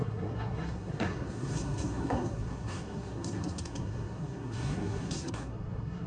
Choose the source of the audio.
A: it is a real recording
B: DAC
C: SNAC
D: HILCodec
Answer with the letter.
C